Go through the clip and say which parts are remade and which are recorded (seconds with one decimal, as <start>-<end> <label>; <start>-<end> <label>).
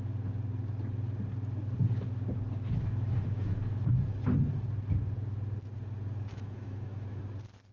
0.0-2.8 recorded; 2.8-3.9 remade; 3.9-6.3 recorded; 6.3-7.2 remade; 7.2-7.7 recorded